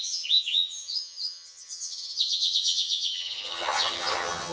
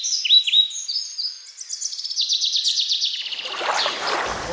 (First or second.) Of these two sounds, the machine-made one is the first